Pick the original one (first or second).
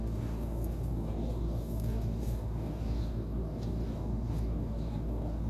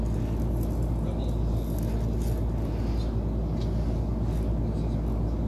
second